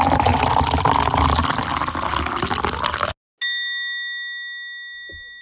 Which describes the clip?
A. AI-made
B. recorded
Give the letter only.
B